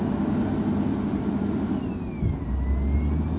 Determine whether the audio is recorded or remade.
recorded